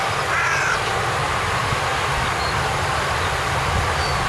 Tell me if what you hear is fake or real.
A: real